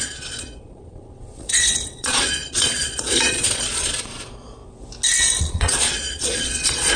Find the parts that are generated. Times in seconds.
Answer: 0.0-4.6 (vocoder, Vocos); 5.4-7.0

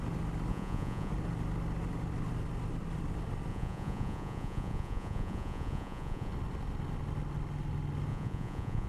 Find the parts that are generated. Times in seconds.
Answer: 0.5-1.1 (vocoder, Vocos); 3.5-6.3; 8.1-8.9

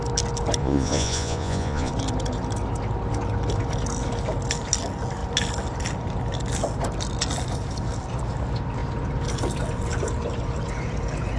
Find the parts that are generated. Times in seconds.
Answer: 0.6-1.9 (vocoder, Vocos)

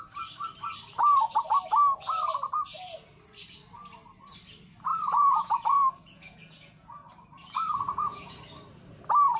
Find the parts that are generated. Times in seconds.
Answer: 4.9-7.0 (vocoder, Vocos); 7.4-8.4